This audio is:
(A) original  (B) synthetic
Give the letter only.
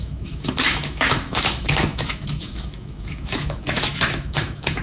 B